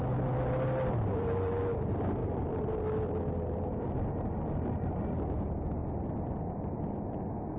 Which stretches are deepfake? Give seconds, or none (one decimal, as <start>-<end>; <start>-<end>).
none